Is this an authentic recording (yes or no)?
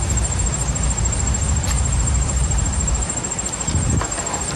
no